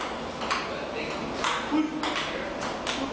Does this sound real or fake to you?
real